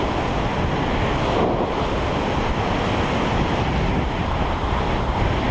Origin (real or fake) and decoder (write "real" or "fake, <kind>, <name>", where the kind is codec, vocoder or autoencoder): real